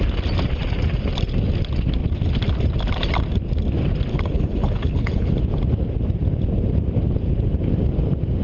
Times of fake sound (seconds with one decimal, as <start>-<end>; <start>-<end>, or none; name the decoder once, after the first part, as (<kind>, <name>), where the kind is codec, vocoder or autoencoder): 4.1-5.4 (codec, HILCodec)